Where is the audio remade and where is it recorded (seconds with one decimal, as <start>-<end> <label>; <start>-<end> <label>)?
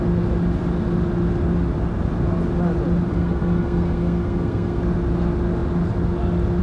0.0-3.1 recorded; 3.1-4.8 remade; 4.8-6.6 recorded